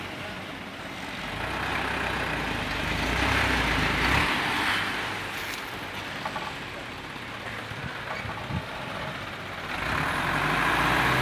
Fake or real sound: real